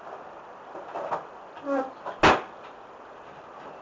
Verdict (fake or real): real